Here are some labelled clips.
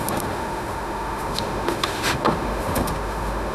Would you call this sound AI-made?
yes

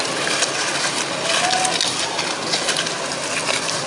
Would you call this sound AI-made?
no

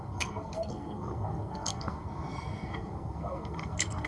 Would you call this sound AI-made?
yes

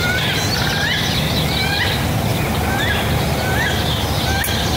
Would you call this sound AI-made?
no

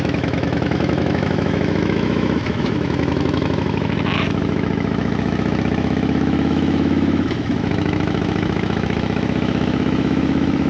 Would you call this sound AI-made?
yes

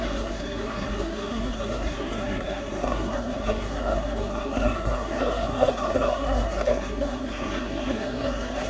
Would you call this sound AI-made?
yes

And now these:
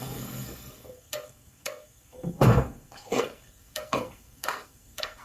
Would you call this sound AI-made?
yes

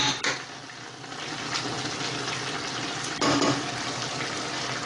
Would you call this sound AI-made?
no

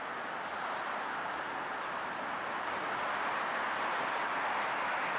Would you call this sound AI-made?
no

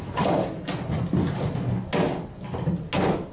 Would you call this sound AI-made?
no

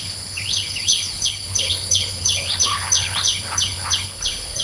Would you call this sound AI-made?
yes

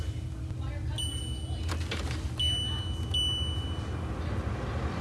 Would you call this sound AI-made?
no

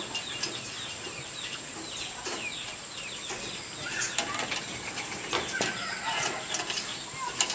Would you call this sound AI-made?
no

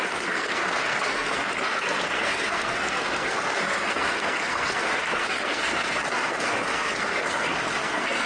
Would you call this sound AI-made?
yes